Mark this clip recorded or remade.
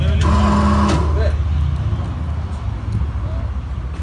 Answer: recorded